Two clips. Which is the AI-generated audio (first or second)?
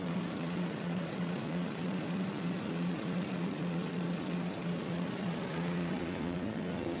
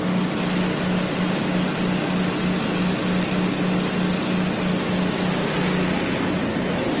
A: first